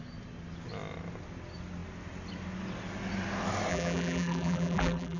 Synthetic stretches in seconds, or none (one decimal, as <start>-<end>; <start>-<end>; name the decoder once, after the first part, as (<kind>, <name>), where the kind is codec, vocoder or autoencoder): 3.7-5.2 (vocoder, BigVGAN v2)